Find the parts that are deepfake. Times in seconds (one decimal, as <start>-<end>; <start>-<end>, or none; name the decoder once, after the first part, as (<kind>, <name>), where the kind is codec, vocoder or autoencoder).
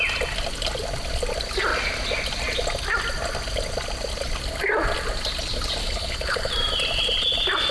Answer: 5.8-6.5 (codec, HILCodec)